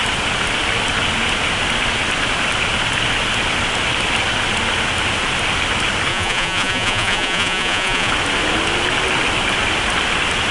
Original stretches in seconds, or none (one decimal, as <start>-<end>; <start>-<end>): 0.0-6.1; 8.1-10.5